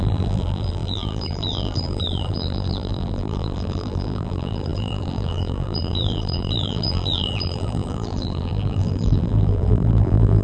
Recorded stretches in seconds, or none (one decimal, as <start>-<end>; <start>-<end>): none